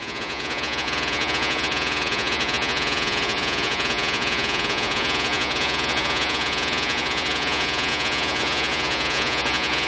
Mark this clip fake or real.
fake